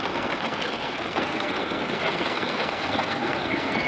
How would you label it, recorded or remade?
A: remade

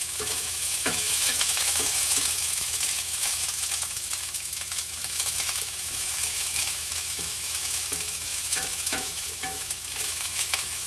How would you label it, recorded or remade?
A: remade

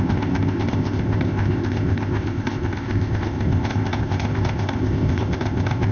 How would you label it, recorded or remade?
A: remade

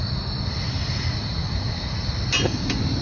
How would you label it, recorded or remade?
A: recorded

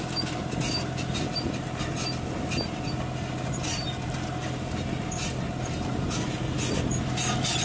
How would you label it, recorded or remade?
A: recorded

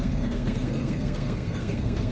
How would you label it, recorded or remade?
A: remade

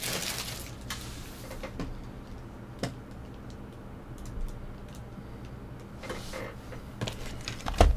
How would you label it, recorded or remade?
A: recorded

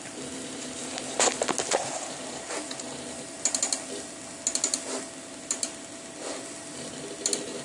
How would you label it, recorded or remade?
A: recorded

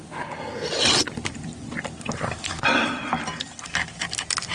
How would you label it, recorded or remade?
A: recorded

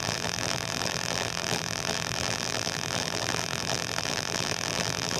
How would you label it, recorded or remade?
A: remade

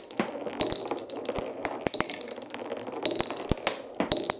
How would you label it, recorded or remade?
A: recorded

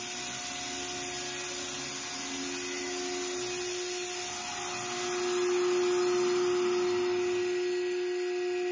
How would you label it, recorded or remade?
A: recorded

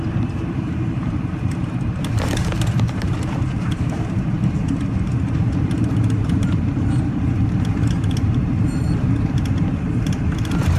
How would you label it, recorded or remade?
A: remade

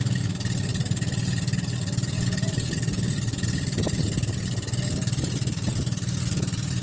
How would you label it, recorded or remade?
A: remade